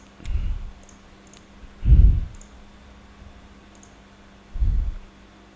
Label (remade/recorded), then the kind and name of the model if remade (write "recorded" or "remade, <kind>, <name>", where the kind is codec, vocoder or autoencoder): recorded